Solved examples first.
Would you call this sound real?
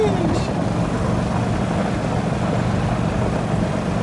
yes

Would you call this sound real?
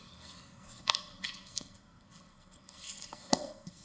no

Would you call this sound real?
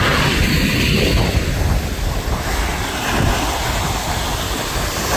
yes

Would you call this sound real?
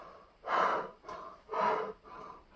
no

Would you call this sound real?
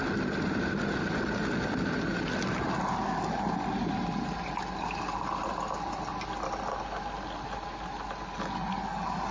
yes